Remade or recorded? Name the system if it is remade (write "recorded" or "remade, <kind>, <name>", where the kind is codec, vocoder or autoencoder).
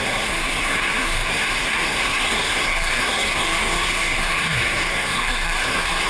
remade, codec, SNAC